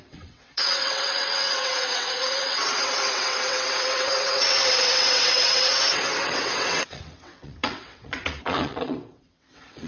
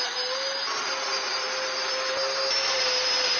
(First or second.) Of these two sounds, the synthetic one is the first